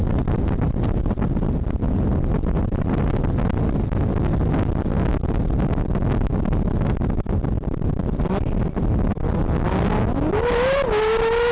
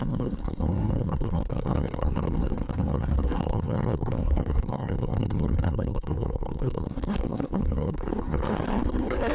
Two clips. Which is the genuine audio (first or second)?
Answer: first